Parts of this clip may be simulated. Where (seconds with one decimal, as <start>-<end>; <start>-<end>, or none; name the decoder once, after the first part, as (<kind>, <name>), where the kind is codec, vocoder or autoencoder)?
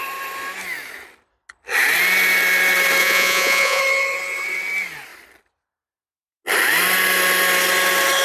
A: 3.0-3.8 (vocoder, Vocos)